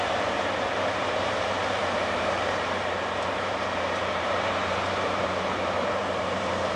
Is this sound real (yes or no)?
no